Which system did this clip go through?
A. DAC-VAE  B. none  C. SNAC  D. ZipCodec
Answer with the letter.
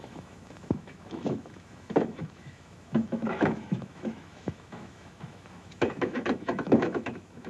A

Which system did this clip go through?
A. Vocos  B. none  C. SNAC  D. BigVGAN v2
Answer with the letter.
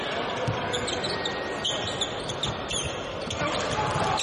B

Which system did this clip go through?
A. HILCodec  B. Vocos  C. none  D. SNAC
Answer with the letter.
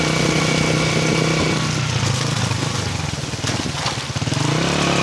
C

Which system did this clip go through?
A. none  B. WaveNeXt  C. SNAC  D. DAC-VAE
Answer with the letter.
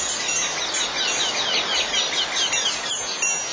A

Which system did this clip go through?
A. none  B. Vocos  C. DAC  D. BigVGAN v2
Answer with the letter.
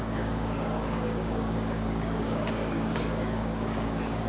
C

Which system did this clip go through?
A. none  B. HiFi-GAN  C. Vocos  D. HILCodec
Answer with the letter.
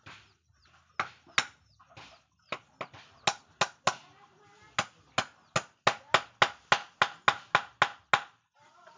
A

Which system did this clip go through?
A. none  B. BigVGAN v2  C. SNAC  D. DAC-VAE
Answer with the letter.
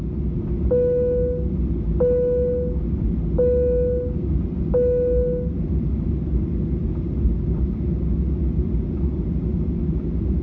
A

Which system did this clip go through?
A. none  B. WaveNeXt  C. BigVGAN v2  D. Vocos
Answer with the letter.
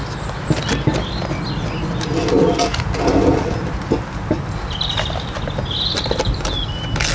A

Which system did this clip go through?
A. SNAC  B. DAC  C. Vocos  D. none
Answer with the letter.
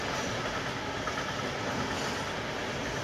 D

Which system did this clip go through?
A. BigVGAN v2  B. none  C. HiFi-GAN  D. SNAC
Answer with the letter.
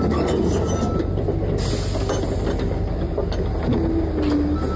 B